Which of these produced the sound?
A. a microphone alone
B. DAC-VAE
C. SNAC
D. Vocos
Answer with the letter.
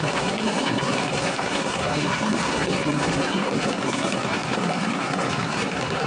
C